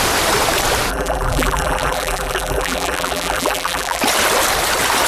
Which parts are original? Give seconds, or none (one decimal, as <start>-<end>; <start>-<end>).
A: 0.0-0.9; 4.0-5.1